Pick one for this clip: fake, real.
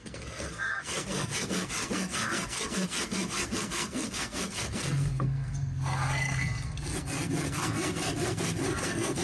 fake